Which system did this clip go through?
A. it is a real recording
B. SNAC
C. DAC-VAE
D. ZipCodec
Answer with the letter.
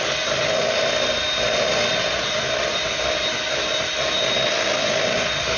A